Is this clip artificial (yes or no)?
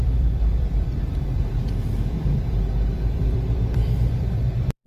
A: yes